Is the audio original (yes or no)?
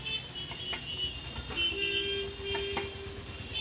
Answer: yes